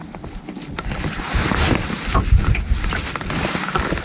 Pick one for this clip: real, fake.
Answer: fake